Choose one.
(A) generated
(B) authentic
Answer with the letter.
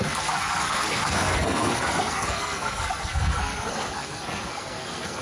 A